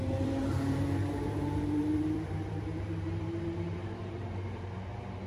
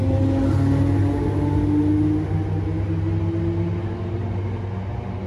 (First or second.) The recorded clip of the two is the second